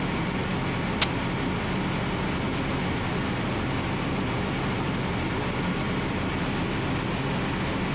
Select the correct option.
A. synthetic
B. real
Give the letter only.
B